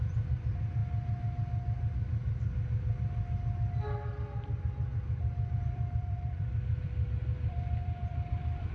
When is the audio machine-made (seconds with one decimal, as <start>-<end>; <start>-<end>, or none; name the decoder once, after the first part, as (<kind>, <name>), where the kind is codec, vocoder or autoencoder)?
0.0-0.8 (vocoder, BigVGAN v2); 5.6-8.7